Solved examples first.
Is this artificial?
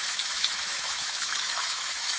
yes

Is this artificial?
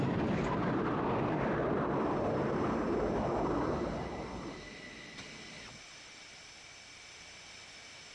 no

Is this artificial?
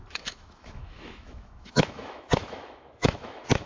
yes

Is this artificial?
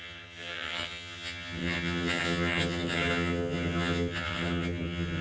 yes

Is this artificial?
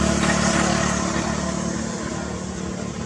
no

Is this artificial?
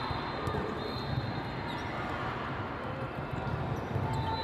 no